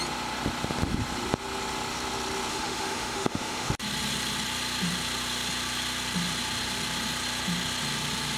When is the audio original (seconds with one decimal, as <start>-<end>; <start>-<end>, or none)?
0.0-2.5; 3.7-8.4